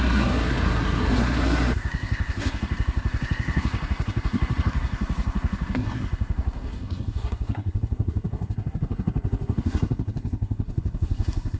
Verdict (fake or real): fake